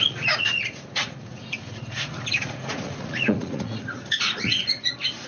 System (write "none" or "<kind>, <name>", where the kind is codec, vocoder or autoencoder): vocoder, Vocos